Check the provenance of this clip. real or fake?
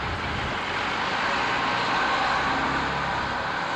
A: real